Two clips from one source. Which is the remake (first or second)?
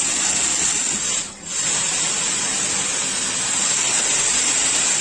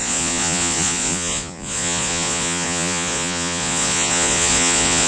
second